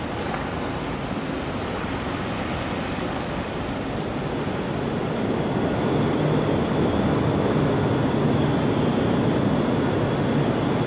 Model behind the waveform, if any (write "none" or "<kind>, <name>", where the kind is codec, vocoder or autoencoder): none